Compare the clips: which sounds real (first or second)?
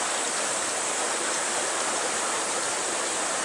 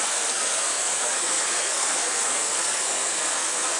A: first